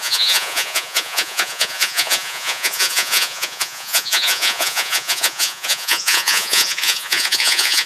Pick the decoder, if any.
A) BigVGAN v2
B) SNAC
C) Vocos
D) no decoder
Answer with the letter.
C